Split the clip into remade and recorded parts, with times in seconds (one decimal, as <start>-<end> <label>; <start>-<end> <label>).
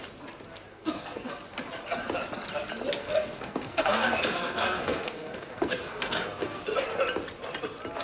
0.0-0.7 recorded; 0.7-1.3 remade; 1.3-3.0 recorded; 3.0-6.6 remade; 6.6-8.0 recorded